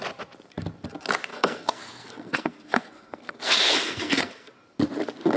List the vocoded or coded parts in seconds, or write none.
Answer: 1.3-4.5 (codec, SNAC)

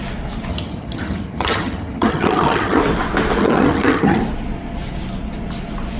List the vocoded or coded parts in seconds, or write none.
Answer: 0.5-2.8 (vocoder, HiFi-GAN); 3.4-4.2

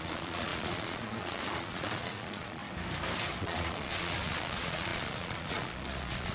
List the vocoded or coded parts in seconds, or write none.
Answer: 0.0-2.6 (vocoder, Vocos); 3.4-6.3